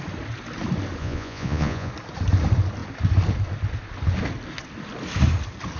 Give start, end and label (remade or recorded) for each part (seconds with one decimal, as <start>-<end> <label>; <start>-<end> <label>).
0.0-1.0 recorded; 1.0-1.9 remade; 1.9-5.8 recorded